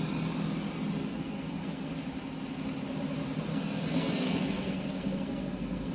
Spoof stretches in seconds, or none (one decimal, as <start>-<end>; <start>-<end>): 1.0-1.9; 3.5-5.9